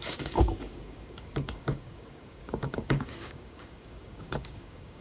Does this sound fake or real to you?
fake